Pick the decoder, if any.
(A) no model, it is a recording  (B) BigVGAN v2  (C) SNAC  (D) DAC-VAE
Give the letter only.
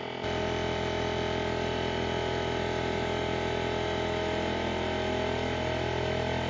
A